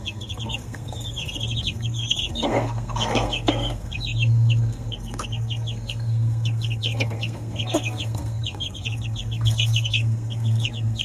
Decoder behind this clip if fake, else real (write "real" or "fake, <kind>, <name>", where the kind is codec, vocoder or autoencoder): fake, codec, SNAC